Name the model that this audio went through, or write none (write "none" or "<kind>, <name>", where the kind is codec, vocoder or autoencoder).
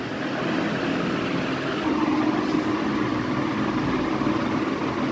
none